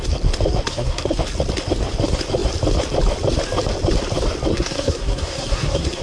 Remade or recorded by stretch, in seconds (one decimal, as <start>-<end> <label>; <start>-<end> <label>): 0.0-0.7 recorded; 0.7-1.2 remade; 1.2-4.5 recorded; 4.5-6.0 remade

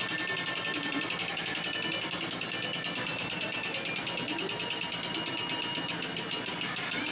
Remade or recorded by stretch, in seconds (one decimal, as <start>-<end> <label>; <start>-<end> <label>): 0.0-7.1 recorded

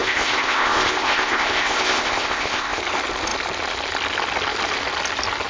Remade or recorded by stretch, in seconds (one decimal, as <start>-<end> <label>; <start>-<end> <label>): 0.0-2.8 remade; 2.8-5.5 recorded

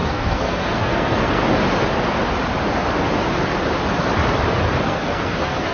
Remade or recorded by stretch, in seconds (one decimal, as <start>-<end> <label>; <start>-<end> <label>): 0.0-1.4 remade; 1.4-4.8 recorded; 4.8-5.7 remade